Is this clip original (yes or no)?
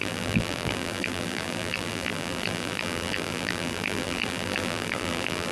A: no